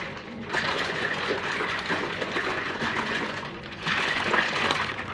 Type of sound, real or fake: fake